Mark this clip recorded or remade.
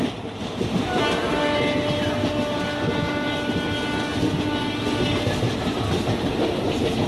recorded